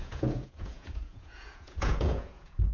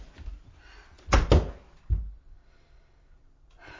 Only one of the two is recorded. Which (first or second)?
second